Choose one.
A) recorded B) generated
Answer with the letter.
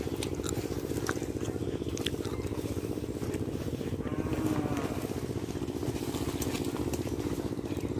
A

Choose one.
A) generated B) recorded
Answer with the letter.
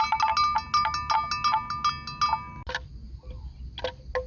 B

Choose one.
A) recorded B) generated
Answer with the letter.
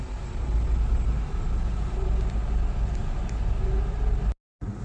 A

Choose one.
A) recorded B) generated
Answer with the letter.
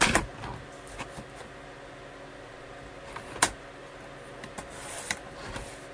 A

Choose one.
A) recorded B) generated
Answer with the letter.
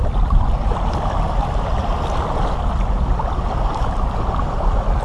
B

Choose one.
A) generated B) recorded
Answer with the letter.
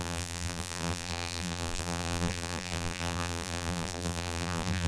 A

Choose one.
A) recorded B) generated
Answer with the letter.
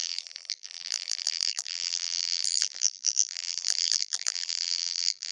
B